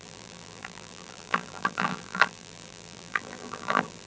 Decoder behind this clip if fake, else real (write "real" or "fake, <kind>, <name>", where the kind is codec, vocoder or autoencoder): fake, vocoder, BigVGAN v2